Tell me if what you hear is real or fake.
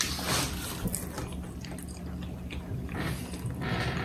real